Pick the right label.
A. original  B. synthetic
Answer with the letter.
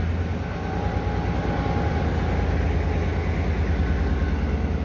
A